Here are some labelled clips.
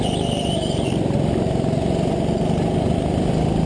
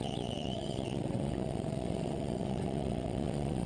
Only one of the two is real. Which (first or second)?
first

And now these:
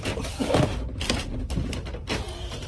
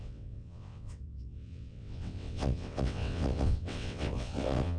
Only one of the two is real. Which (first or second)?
first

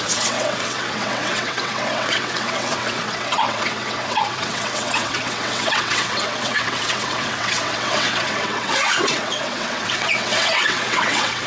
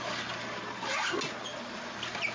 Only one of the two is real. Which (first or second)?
second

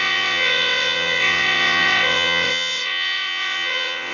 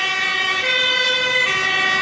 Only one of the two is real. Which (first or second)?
second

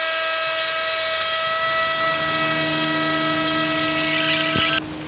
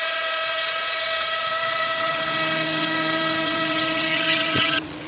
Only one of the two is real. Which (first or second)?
first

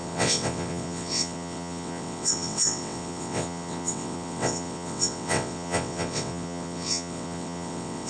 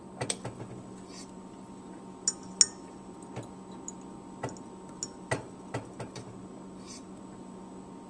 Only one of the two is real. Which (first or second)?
second